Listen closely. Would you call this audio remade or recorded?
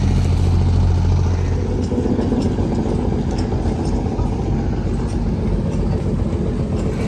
recorded